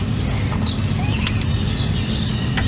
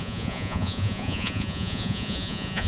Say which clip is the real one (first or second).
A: first